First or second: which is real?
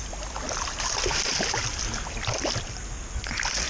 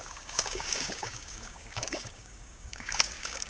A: first